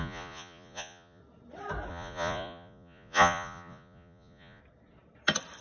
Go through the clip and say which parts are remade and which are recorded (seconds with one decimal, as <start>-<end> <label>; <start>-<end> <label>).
0.0-1.2 remade; 1.2-1.9 recorded; 1.9-4.6 remade; 4.6-5.6 recorded

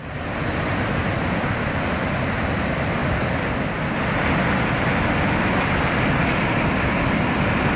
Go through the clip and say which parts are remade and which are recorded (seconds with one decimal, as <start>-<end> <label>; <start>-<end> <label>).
0.0-7.8 recorded

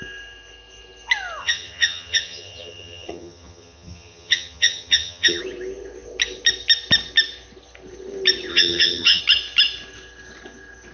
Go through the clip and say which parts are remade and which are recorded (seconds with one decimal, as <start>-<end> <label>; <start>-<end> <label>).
0.0-1.4 recorded; 1.4-5.4 remade; 5.4-8.5 recorded; 8.5-9.2 remade; 9.2-10.9 recorded